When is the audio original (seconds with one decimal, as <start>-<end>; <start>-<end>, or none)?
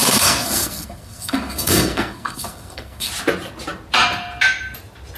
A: 3.1-5.2